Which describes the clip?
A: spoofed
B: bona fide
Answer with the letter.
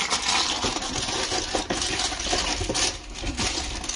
B